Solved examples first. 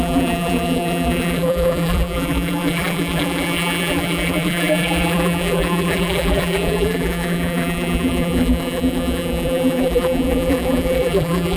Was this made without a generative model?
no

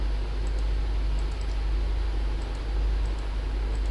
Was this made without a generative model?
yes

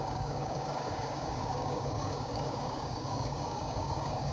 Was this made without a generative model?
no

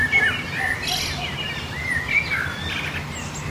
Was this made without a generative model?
yes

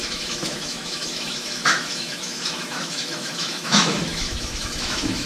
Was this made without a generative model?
no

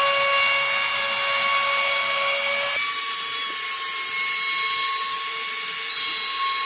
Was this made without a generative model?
yes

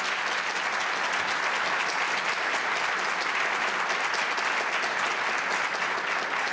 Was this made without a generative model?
yes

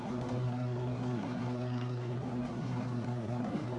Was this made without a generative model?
no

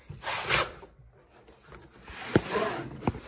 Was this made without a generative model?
yes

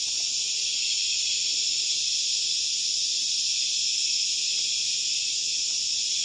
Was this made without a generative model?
yes